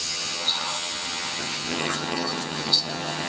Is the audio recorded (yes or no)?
no